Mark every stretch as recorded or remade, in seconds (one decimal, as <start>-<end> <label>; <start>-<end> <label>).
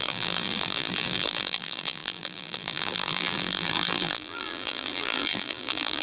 0.0-6.0 remade